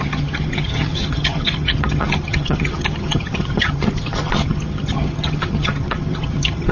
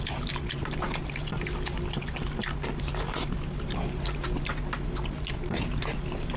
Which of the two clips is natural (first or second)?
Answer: second